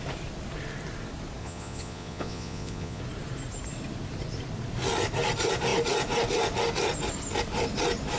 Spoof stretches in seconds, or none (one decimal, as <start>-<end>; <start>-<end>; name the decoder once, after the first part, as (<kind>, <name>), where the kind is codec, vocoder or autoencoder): 1.4-3.0 (vocoder, Vocos)